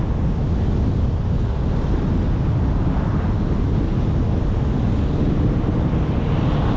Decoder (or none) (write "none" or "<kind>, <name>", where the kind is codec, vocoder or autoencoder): none